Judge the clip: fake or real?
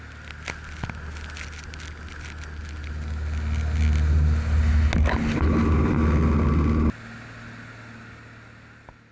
real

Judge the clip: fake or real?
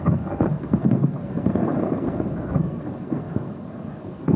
fake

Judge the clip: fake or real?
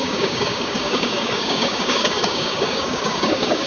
fake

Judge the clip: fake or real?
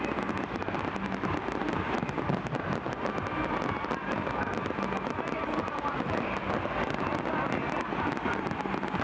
real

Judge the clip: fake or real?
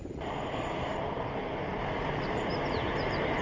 real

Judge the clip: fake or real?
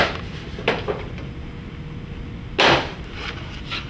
real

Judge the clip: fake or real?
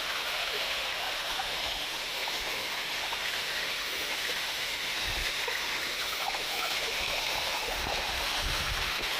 fake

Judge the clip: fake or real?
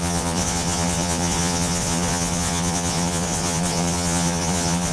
fake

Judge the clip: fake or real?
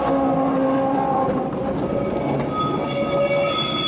real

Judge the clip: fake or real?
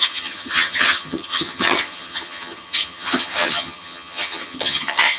fake